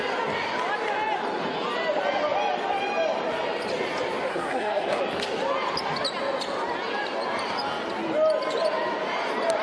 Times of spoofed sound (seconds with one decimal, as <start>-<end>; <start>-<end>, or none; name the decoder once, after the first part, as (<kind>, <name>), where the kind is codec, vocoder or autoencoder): 4.3-5.0 (codec, SNAC)